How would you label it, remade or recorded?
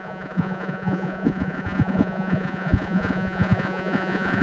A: remade